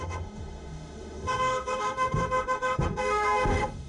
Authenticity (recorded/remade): remade